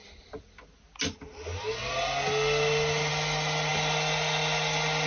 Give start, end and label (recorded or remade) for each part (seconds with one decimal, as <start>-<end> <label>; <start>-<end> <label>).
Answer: 0.0-5.1 recorded